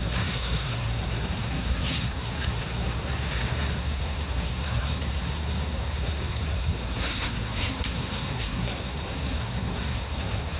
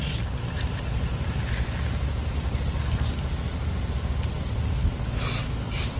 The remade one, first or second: first